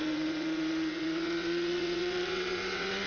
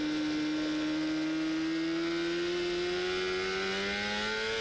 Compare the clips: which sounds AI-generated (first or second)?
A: first